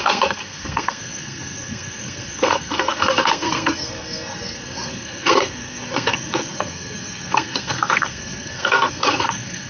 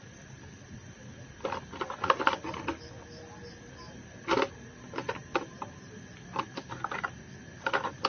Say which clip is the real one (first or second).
second